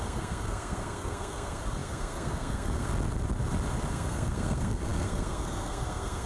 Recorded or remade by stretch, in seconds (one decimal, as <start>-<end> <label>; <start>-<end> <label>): 0.0-2.9 remade; 2.9-3.9 recorded; 3.9-6.3 remade